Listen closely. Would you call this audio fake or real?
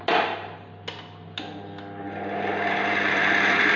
real